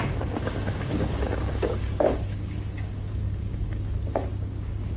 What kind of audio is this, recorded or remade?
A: remade